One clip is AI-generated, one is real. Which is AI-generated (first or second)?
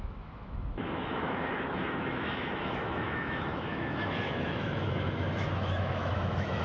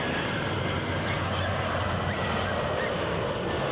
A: first